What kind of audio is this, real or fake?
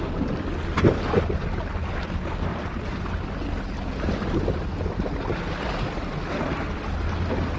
real